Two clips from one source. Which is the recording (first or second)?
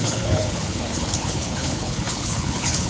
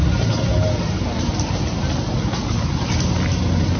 second